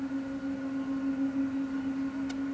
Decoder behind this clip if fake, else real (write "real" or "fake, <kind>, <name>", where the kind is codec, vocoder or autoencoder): real